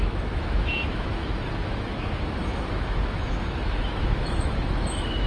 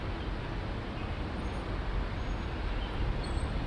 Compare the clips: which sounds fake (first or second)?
first